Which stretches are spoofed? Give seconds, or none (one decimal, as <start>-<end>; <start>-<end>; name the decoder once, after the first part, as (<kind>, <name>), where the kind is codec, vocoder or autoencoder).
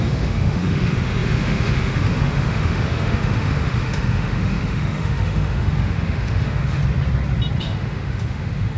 0.0-6.8 (autoencoder, DAC-VAE); 7.6-8.8